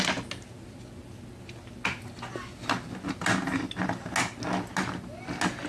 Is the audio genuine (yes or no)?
yes